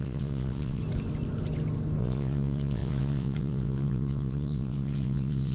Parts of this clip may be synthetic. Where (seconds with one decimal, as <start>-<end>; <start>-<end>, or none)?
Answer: 0.0-0.8; 2.0-5.5